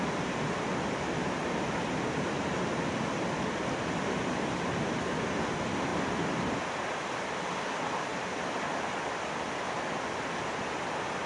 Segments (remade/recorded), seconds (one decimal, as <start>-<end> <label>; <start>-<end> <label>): 0.0-11.3 recorded